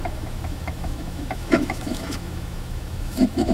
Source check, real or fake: fake